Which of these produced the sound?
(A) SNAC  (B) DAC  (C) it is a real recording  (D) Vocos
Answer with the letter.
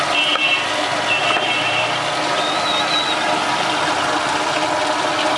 C